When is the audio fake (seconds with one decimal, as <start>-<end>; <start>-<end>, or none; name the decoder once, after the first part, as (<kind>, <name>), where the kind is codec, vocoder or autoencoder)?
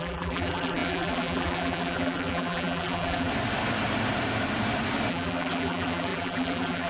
0.0-3.3 (vocoder, BigVGAN v2); 5.1-6.9